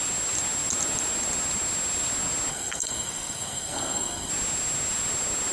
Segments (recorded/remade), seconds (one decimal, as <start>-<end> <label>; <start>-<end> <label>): 0.0-2.5 recorded; 2.5-4.3 remade; 4.3-5.5 recorded

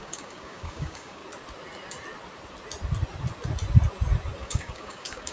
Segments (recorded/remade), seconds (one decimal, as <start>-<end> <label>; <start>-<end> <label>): 0.0-1.2 remade; 1.2-4.4 recorded; 4.4-5.3 remade